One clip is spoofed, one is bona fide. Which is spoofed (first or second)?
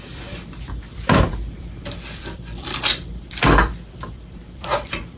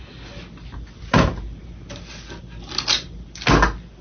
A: first